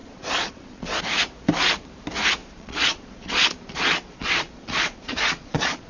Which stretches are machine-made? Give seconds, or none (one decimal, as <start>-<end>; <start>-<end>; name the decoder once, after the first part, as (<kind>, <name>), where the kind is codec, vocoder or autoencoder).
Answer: 0.0-1.0 (vocoder, Vocos); 2.4-5.9